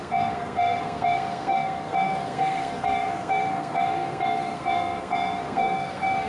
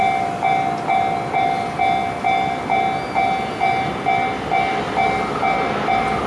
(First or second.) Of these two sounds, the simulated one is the first